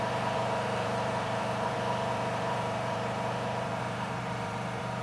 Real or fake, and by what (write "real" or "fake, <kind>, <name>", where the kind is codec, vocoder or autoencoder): fake, vocoder, BigVGAN v2